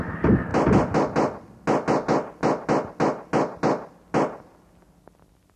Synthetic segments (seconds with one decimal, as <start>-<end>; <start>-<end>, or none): none